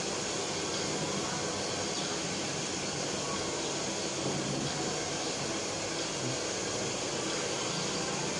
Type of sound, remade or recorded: recorded